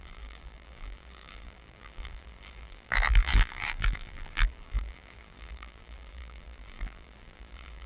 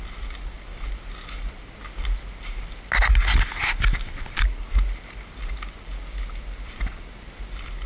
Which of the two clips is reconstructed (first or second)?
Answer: first